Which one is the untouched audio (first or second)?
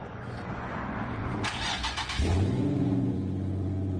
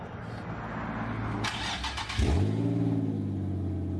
second